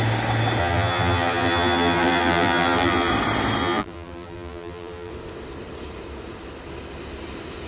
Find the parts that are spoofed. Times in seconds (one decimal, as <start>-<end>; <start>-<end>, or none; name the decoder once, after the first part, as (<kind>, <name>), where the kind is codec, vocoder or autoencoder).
0.6-3.1 (vocoder, BigVGAN v2); 3.6-5.1